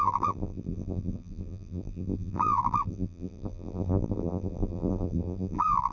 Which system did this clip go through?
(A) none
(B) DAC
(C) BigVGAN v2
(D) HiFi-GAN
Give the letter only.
C